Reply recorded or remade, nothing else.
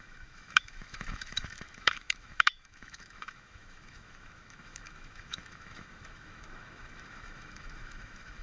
remade